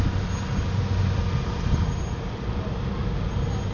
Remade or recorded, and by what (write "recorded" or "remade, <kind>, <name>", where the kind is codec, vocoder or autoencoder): recorded